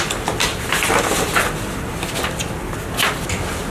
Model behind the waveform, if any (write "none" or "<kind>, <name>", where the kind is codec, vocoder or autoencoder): none